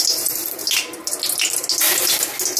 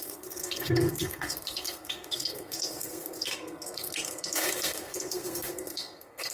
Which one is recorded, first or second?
first